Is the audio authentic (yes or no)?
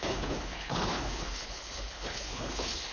no